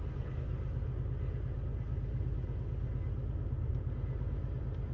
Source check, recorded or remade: recorded